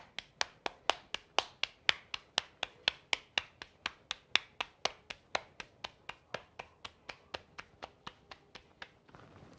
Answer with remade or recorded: recorded